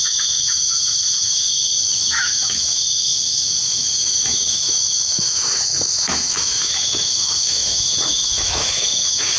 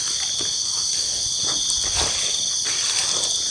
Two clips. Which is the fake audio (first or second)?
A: first